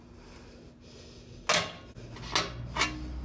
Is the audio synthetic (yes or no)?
no